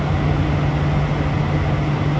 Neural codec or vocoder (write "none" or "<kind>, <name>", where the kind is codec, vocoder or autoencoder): none